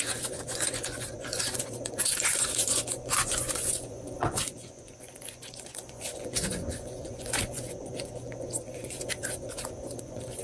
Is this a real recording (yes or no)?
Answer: no